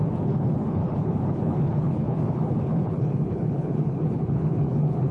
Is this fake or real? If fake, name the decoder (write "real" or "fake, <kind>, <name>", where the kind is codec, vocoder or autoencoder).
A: fake, codec, HILCodec